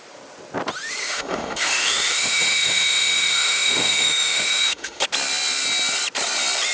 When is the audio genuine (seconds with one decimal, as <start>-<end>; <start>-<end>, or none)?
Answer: 0.0-1.0; 5.0-6.7